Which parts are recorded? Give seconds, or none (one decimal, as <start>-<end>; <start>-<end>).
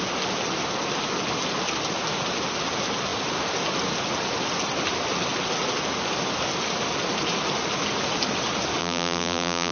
0.0-8.8